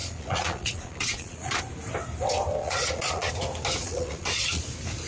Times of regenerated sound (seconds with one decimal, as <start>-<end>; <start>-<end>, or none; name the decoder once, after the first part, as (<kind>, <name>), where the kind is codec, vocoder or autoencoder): 0.0-1.6 (vocoder, Vocos); 2.6-3.3; 3.8-4.6